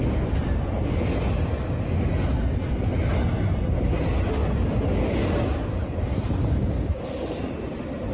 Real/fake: real